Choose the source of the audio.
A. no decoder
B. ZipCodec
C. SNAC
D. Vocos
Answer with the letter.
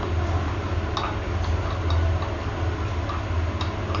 A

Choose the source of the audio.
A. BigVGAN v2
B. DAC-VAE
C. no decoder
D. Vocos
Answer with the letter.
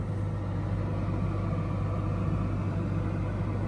C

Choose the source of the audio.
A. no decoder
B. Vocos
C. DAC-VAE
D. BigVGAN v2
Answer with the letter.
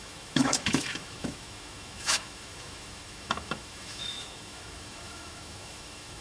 C